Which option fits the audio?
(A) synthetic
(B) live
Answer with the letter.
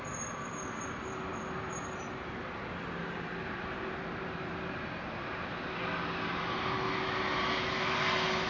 B